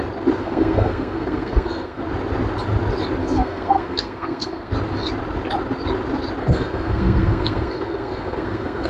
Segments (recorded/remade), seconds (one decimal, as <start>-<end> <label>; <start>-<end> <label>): 0.0-0.4 recorded; 0.4-2.0 remade; 2.0-3.2 recorded; 3.2-4.7 remade; 4.7-6.4 recorded; 6.4-8.9 remade